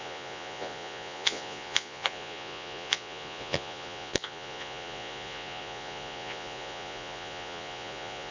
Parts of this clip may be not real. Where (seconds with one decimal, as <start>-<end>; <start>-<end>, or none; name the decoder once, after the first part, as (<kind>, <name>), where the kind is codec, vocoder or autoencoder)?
0.0-8.3 (vocoder, Vocos)